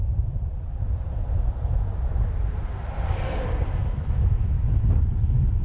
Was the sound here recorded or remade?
remade